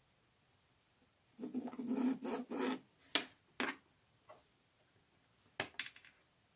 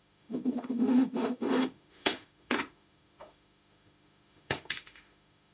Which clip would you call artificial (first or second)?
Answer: second